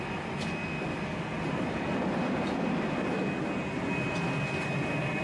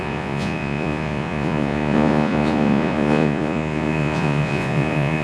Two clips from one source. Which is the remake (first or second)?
second